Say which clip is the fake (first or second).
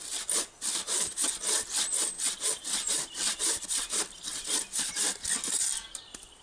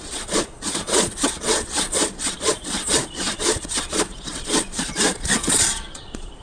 second